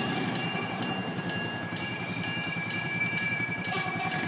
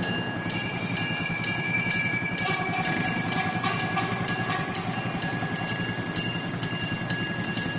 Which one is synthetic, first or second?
first